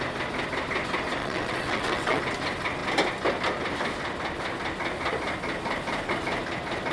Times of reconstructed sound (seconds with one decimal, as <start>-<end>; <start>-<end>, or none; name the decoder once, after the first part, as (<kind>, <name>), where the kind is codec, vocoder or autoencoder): 1.2-2.2 (vocoder, WaveNeXt)